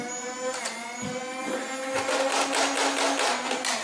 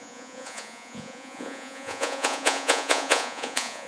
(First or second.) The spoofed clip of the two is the second